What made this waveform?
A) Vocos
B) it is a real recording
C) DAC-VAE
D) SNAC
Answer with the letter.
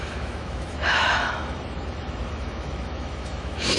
C